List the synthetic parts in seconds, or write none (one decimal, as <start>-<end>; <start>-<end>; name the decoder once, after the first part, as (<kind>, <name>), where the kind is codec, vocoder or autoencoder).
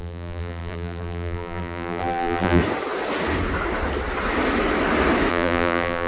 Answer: 0.0-2.6 (vocoder, BigVGAN v2); 5.3-6.1